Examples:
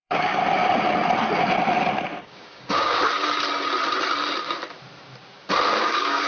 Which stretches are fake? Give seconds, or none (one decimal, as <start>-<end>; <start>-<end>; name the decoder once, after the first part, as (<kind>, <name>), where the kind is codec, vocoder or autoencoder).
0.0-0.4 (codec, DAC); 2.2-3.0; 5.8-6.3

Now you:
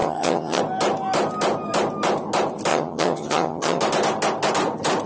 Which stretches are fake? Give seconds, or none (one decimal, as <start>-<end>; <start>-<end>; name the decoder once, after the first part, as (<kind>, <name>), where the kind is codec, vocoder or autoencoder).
0.0-0.6 (vocoder, HiFi-GAN); 2.7-3.8

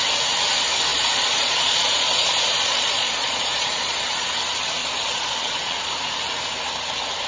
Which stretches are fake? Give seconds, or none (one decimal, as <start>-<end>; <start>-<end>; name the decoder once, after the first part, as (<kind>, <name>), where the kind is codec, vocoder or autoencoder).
0.9-4.3 (vocoder, Vocos); 4.8-5.9

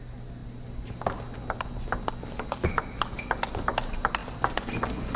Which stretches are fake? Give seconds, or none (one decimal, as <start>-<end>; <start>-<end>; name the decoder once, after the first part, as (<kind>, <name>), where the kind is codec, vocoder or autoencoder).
none

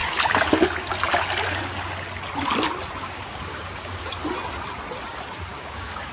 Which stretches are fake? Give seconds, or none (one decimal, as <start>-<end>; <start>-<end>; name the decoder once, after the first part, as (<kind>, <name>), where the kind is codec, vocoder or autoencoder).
3.0-4.2 (codec, DAC); 5.5-6.1